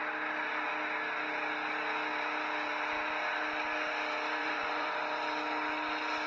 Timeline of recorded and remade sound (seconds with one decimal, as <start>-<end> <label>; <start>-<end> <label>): 0.0-4.4 recorded; 4.4-5.0 remade; 5.0-6.3 recorded